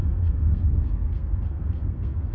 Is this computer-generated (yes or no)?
yes